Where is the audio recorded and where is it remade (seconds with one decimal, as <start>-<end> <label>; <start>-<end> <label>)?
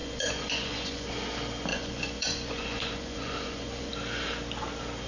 0.0-1.1 remade; 1.1-1.7 recorded; 1.7-3.9 remade; 3.9-5.1 recorded